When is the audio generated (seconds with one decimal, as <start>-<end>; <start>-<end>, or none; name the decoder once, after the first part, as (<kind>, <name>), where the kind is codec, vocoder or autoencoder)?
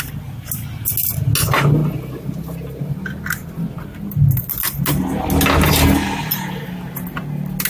none